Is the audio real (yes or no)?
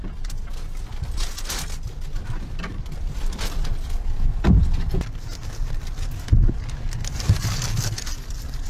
yes